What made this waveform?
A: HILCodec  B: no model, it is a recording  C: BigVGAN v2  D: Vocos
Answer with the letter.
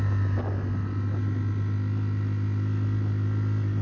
B